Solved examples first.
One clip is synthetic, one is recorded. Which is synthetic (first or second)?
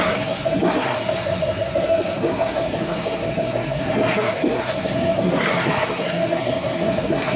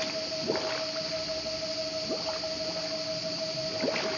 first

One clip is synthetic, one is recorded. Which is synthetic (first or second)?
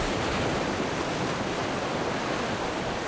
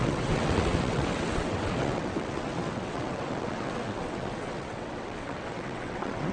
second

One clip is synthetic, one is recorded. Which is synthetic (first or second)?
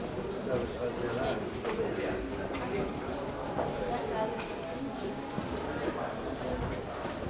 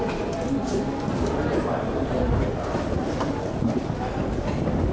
second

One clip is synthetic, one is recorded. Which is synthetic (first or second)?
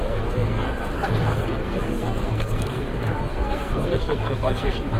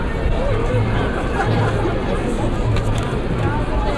first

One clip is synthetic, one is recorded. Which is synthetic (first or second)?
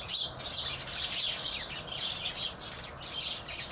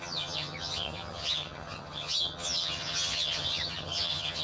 second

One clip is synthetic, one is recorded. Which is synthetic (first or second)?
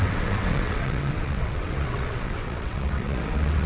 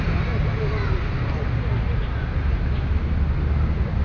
first